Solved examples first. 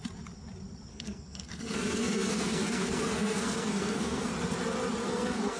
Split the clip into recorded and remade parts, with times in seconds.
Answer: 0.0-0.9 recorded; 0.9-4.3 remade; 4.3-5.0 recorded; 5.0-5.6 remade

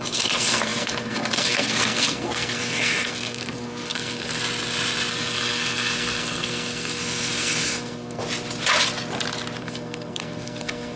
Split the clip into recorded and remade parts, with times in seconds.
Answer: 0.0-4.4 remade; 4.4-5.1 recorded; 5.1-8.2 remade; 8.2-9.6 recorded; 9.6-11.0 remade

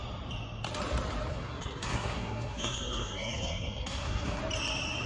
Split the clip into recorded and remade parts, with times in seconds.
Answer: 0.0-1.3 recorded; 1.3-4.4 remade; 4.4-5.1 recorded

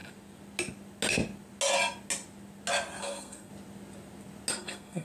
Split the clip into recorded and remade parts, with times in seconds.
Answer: 0.0-3.0 recorded; 3.0-3.5 remade; 3.5-4.5 recorded; 4.5-5.0 remade